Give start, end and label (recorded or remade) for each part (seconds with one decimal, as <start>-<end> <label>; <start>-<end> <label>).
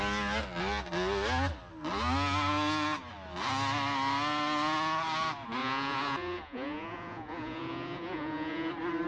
0.0-5.6 recorded; 5.6-8.7 remade; 8.7-9.1 recorded